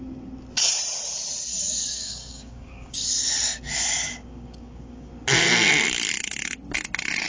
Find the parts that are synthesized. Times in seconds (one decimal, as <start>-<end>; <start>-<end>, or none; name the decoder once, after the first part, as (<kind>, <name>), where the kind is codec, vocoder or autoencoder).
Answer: 1.5-3.0 (codec, DAC); 4.1-5.1